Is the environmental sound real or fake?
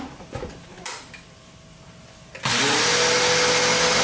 real